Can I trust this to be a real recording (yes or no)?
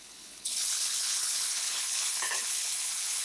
no